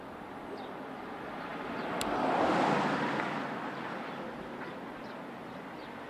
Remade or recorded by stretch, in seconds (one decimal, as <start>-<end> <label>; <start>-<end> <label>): 0.0-6.1 remade